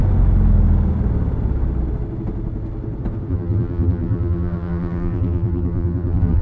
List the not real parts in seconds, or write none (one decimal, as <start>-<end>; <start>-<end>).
3.3-6.4